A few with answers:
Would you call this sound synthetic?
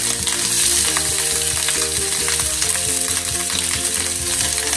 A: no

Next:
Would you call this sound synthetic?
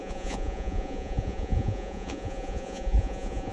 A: yes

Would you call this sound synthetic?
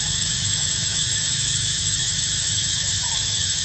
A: yes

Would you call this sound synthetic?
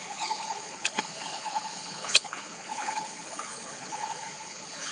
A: yes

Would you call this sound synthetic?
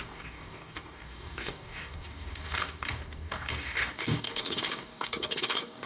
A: yes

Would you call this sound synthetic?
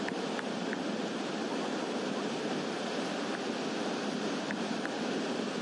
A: no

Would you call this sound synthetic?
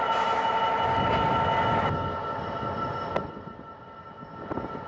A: no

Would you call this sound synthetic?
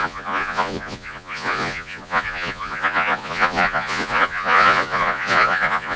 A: yes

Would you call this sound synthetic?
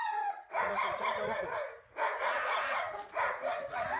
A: yes